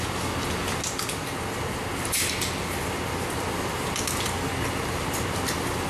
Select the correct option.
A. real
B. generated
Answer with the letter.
A